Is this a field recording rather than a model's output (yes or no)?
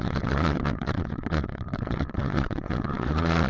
no